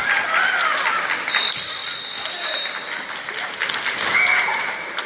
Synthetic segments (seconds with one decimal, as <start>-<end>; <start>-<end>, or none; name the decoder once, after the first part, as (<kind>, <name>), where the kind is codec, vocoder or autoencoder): none